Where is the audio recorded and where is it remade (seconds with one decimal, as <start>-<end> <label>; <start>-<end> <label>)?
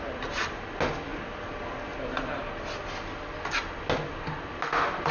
0.0-5.1 recorded